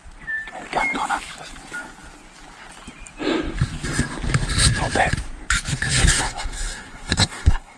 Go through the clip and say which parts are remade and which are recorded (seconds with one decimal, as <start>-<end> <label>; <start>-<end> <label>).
0.0-5.7 recorded; 5.7-7.8 remade